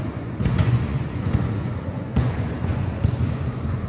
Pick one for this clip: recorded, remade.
remade